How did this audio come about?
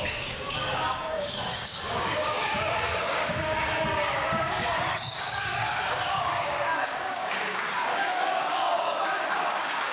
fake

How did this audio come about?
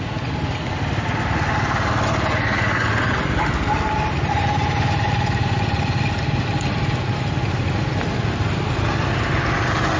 real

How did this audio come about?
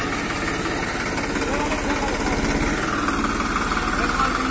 real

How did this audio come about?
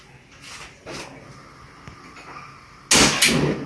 real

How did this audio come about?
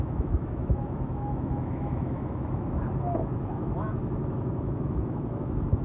fake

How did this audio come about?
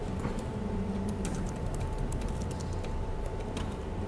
fake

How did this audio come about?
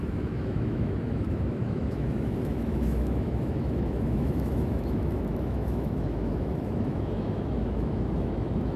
fake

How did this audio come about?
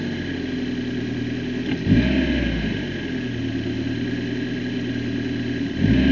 real